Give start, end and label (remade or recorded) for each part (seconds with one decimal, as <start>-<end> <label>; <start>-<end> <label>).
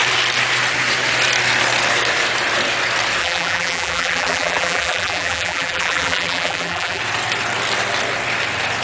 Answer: 0.0-3.2 recorded; 3.2-7.0 remade; 7.0-8.8 recorded